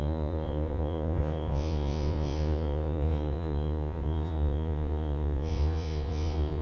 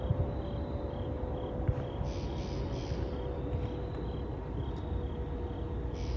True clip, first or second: second